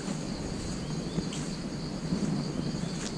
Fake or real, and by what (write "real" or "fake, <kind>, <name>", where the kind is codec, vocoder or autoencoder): real